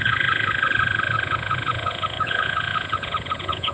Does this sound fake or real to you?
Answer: fake